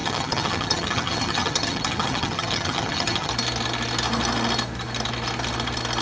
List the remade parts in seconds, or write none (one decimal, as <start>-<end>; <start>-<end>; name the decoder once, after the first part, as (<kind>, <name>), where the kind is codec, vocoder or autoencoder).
0.0-3.3 (vocoder, HiFi-GAN)